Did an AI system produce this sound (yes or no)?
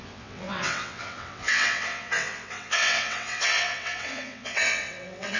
yes